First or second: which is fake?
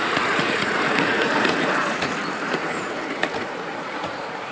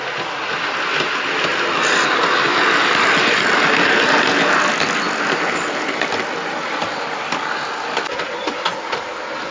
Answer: first